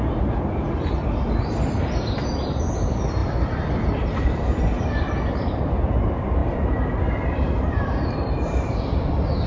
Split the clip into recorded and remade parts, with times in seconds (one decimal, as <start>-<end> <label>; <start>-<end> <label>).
0.0-3.2 recorded; 3.2-5.1 remade; 5.1-6.4 recorded; 6.4-9.5 remade